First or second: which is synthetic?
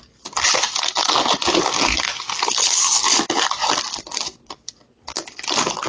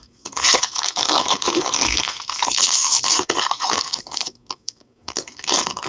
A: second